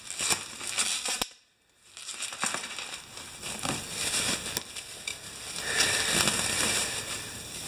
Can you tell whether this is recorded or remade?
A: recorded